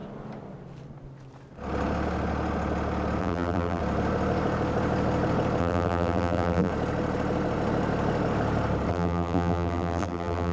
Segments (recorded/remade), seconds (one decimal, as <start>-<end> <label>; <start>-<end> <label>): 0.0-3.2 recorded; 3.2-3.8 remade; 3.8-5.6 recorded; 5.6-6.7 remade; 6.7-8.9 recorded; 8.9-10.5 remade